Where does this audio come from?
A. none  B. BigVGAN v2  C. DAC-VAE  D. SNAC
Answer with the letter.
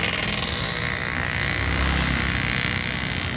A